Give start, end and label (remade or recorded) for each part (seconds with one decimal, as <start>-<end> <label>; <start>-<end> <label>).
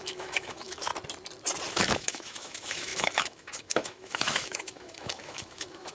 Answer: 0.0-0.9 remade; 0.9-1.7 recorded; 1.7-5.9 remade